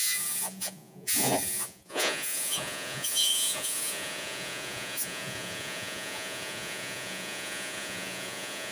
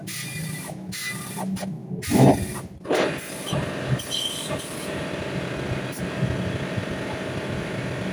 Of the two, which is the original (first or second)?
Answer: second